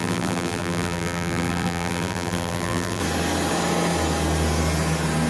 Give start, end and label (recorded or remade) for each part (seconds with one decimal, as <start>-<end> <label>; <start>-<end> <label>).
0.0-3.0 remade; 3.0-5.3 recorded

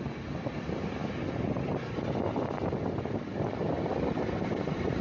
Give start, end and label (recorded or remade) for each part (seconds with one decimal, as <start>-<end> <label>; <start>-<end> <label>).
0.0-1.0 remade; 1.0-4.0 recorded; 4.0-5.0 remade